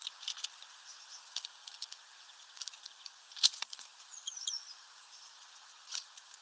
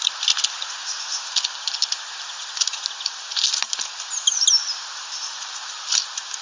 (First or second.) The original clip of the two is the second